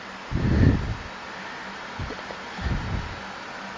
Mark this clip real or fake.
real